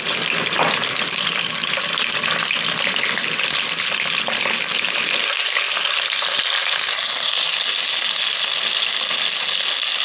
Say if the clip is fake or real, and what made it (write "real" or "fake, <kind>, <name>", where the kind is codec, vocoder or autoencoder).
real